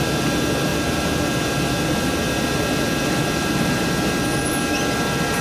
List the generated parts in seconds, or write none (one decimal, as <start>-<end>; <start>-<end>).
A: none